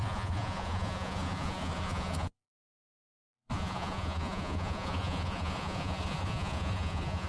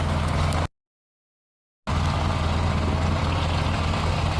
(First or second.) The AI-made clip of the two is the first